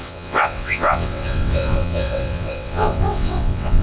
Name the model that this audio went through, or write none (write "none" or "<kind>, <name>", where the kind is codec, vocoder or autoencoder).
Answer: vocoder, WaveNeXt